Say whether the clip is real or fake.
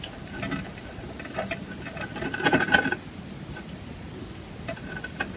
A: real